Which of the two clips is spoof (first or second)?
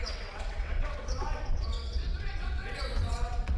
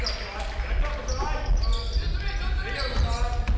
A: first